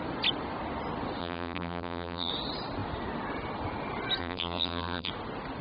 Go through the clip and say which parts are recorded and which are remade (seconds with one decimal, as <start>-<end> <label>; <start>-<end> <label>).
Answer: 0.0-1.2 recorded; 1.2-2.3 remade; 2.3-4.2 recorded; 4.2-5.1 remade; 5.1-5.6 recorded